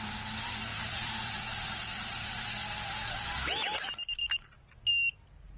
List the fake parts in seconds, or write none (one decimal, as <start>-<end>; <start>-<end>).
0.7-1.5